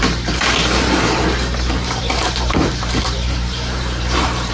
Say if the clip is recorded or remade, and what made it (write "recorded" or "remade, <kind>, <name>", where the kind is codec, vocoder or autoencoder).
remade, vocoder, BigVGAN v2